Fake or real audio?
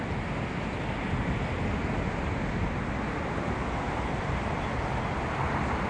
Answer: real